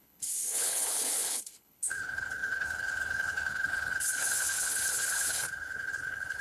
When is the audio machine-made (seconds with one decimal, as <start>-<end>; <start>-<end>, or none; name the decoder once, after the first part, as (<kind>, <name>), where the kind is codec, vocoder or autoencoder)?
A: 0.0-6.4 (codec, HILCodec)